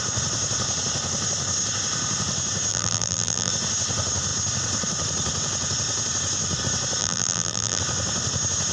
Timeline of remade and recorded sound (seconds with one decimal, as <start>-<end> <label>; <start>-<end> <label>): 0.0-2.7 recorded; 2.7-3.5 remade; 3.5-7.0 recorded; 7.0-7.8 remade; 7.8-8.7 recorded